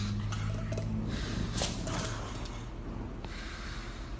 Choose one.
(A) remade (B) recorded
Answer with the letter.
B